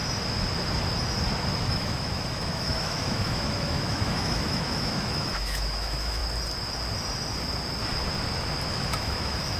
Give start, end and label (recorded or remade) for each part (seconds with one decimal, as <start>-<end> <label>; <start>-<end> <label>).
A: 0.0-1.6 recorded; 1.6-6.2 remade; 6.2-8.7 recorded; 8.7-9.6 remade